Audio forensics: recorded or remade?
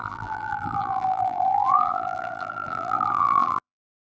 remade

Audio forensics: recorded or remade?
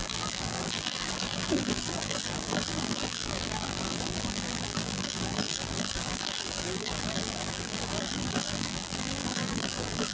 remade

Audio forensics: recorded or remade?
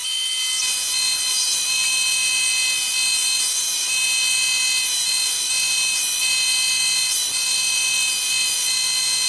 recorded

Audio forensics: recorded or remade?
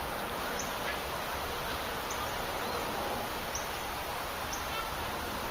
remade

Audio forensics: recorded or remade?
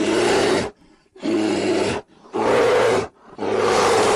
remade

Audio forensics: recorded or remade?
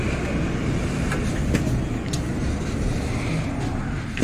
recorded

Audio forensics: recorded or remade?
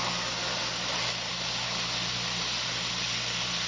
recorded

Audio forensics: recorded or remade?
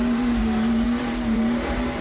remade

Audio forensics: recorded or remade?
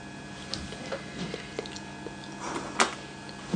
recorded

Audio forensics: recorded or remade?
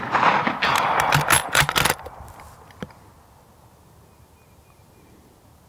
recorded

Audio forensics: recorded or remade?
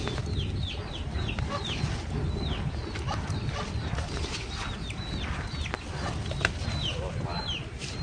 recorded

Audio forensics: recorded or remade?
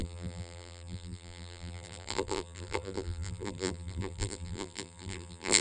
remade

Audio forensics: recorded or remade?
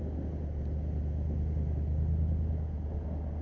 recorded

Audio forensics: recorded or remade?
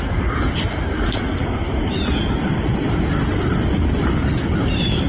remade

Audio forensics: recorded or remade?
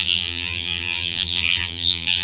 remade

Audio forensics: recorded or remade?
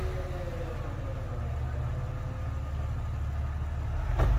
recorded